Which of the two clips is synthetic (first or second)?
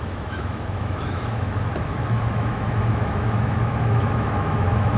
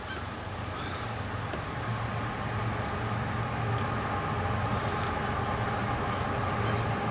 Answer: first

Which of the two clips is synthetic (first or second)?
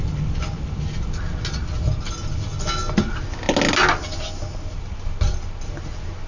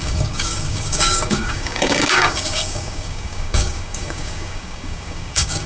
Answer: second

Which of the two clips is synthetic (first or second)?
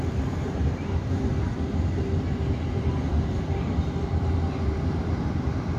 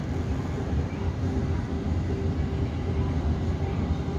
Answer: first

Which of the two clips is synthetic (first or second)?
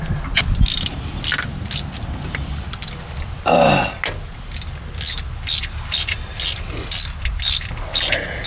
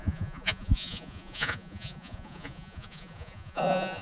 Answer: second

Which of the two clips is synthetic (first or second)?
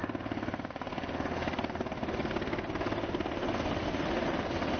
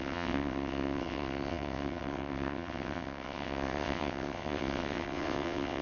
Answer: second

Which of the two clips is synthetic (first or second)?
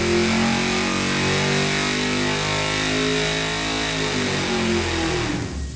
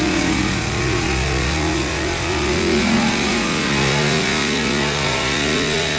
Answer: second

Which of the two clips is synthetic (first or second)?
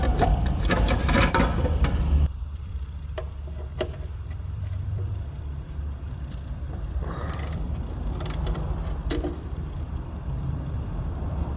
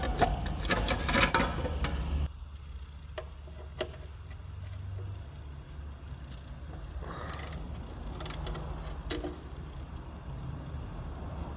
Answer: first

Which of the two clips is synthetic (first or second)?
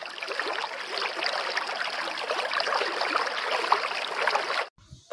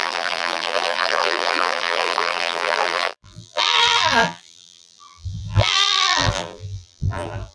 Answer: second